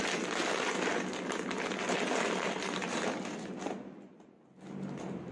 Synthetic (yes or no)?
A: no